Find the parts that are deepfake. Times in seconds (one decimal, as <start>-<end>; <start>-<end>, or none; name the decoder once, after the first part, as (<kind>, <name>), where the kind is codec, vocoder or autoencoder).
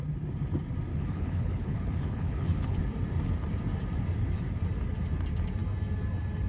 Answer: 0.9-2.8 (codec, HILCodec)